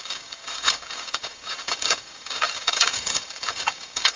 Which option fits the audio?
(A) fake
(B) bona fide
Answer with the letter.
A